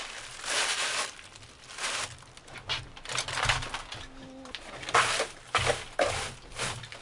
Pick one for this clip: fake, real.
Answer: real